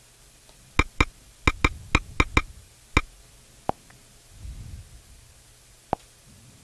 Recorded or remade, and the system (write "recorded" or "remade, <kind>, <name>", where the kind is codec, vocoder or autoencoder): recorded